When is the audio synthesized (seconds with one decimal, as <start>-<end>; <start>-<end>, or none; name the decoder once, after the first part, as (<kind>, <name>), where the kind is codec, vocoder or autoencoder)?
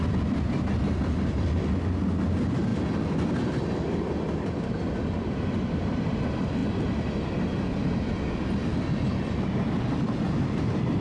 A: none